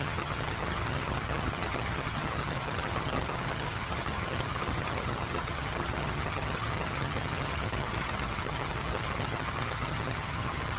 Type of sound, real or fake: fake